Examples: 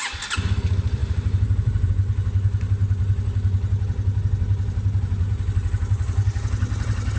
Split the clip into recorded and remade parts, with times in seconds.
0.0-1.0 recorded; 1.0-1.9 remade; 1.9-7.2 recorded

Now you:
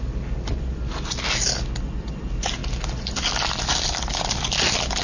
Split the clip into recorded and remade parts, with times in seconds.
0.0-5.0 recorded